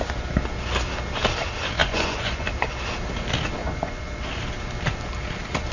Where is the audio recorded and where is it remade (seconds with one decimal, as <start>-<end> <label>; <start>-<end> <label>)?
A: 0.0-1.8 recorded; 1.8-2.5 remade; 2.5-3.6 recorded; 3.6-4.3 remade; 4.3-5.7 recorded